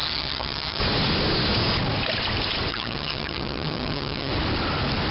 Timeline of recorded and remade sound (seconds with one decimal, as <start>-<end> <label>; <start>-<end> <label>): 0.0-0.8 remade; 0.8-2.7 recorded; 2.7-4.3 remade; 4.3-5.1 recorded